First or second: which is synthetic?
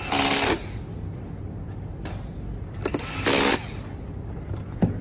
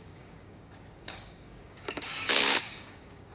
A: second